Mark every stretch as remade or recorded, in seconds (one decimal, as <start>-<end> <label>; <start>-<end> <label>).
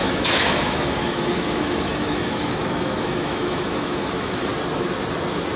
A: 0.0-4.5 remade; 4.5-5.6 recorded